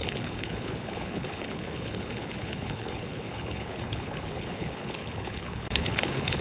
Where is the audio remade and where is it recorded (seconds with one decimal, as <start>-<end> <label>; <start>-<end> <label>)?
0.0-6.4 remade